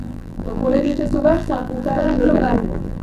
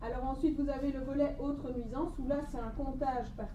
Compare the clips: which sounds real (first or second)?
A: second